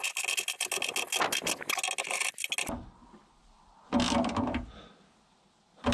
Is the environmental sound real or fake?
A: real